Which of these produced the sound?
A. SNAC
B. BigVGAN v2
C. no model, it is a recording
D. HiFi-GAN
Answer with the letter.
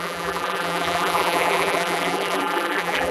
B